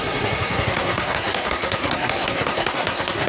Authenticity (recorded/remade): remade